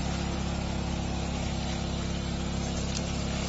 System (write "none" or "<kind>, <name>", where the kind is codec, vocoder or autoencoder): none